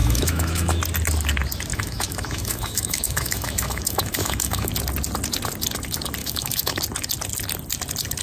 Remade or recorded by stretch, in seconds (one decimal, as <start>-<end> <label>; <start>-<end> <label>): 0.0-0.8 remade; 0.8-1.7 recorded; 1.7-4.7 remade; 4.7-6.2 recorded; 6.2-6.8 remade; 6.8-8.2 recorded